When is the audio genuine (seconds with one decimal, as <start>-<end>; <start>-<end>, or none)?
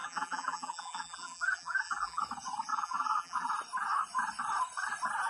2.2-2.7; 3.5-5.3